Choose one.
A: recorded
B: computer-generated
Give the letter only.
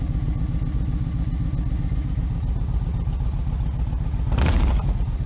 A